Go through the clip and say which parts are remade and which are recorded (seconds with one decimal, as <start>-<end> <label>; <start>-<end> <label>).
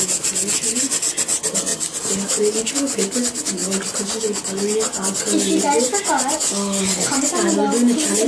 0.0-8.3 recorded